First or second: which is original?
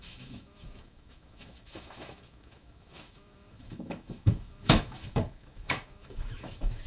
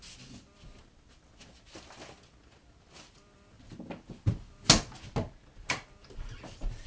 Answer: second